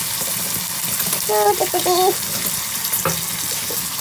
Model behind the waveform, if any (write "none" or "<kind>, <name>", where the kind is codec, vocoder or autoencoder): none